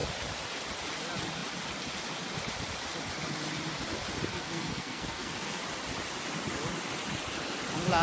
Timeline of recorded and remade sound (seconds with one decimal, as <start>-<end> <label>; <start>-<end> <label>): 0.0-4.3 recorded; 4.3-5.6 remade; 5.6-8.0 recorded